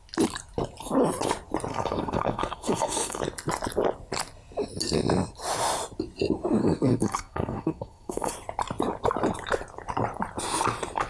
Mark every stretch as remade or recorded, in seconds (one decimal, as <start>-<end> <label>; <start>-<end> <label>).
0.0-1.7 recorded; 1.7-3.2 remade; 3.2-6.6 recorded; 6.6-8.3 remade; 8.3-11.1 recorded